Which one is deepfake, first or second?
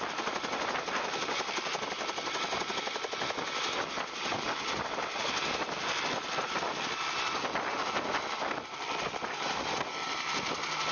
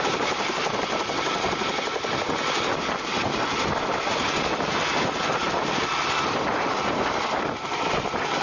second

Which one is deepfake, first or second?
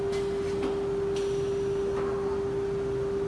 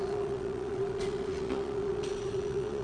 second